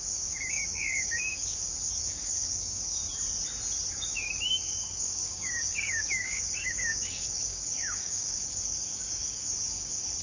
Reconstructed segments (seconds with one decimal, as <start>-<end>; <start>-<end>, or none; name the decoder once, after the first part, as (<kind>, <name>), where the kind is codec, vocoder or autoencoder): 0.0-3.0 (codec, DAC); 3.9-10.2